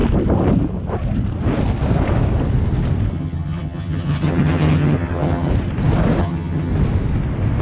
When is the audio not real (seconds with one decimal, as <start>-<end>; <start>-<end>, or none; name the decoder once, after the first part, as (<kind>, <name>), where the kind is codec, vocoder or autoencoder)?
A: 3.1-5.5 (vocoder, HiFi-GAN); 6.2-6.7